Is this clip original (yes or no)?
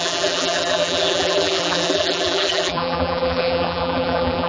no